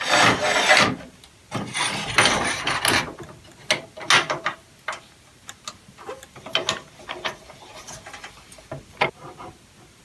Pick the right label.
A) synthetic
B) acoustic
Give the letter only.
B